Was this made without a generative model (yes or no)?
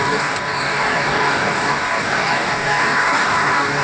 no